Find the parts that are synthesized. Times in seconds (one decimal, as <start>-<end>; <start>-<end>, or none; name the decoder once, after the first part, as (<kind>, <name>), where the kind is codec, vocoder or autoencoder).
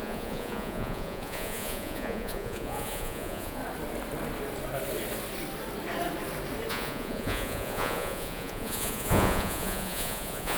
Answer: 0.0-3.6 (vocoder, Vocos); 6.7-10.6